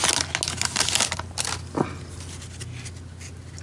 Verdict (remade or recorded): recorded